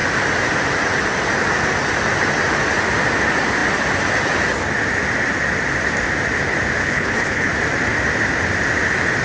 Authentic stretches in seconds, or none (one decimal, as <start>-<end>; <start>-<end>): 0.0-6.8; 7.5-9.2